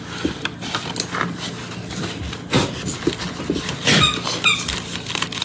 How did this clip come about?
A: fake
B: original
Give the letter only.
B